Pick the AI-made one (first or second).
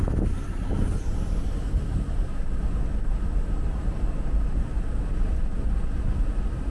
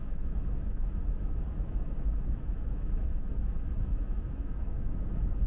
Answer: second